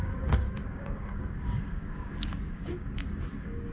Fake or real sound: fake